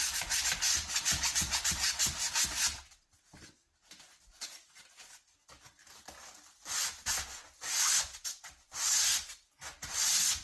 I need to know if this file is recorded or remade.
recorded